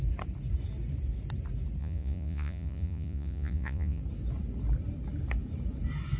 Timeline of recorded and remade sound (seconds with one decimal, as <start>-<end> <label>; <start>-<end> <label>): 0.0-1.8 recorded; 1.8-4.0 remade; 4.0-6.2 recorded